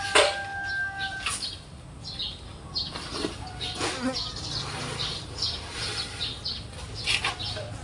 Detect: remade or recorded recorded